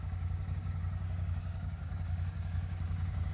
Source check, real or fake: fake